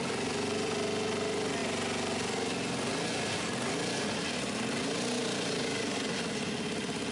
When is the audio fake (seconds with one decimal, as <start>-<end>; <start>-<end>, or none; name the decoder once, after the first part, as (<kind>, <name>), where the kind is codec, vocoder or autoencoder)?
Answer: 0.0-1.6 (vocoder, BigVGAN v2); 5.2-7.1